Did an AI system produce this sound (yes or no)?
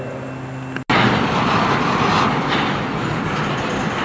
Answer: no